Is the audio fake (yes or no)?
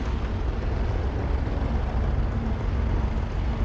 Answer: no